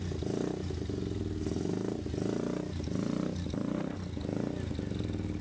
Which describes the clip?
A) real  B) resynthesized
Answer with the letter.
A